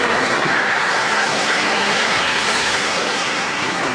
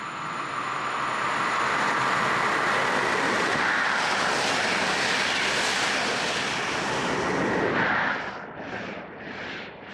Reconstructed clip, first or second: first